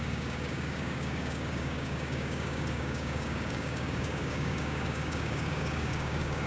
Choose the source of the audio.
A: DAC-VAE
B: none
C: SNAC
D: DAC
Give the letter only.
D